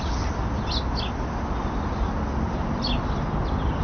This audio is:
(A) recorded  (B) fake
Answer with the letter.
A